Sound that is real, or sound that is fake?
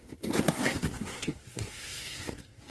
fake